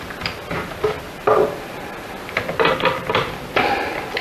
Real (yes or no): yes